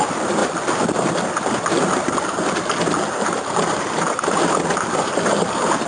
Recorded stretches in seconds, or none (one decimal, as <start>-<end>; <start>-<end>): 0.0-5.9